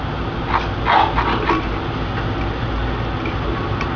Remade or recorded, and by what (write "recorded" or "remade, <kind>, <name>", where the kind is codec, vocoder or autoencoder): recorded